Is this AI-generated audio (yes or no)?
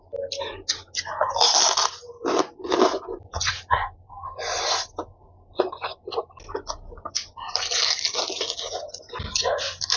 no